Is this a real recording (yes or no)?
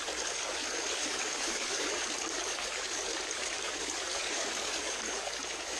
no